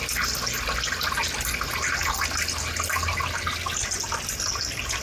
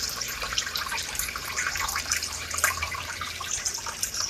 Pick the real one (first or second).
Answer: first